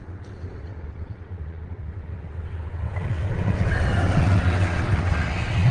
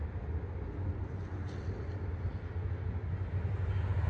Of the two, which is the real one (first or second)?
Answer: second